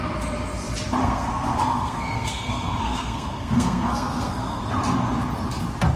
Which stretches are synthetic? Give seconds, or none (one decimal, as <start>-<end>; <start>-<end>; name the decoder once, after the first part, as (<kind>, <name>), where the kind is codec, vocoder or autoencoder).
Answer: 1.0-4.6 (codec, SNAC)